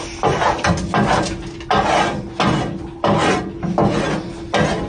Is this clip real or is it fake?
real